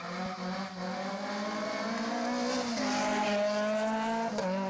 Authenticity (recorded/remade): recorded